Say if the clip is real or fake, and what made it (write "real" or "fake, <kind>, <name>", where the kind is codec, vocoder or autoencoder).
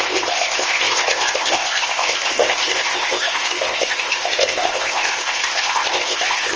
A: fake, codec, ZipCodec